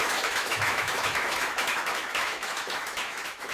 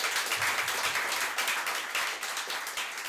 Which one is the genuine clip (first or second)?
second